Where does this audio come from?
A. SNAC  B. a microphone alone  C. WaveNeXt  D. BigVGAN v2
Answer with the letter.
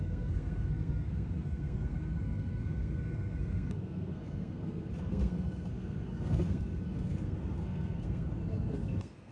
A